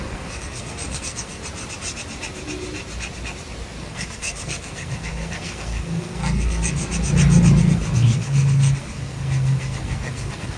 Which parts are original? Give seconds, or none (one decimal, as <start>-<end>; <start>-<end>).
1.4-3.8; 6.8-7.6